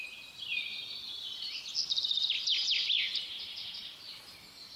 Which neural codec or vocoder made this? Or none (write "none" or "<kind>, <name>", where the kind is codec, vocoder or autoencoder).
none